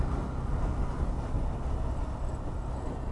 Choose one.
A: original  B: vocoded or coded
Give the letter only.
A